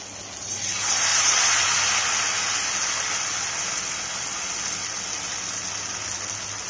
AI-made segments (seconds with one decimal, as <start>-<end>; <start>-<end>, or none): 1.1-1.8